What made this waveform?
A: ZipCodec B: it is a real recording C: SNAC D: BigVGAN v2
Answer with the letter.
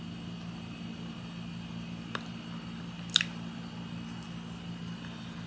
B